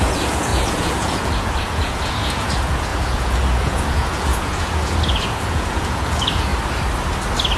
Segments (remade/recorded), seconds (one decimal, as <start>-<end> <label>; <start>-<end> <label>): 0.0-6.5 remade; 6.5-7.6 recorded